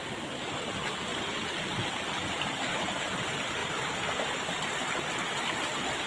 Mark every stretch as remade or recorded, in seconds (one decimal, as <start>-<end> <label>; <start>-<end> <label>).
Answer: 0.0-6.1 recorded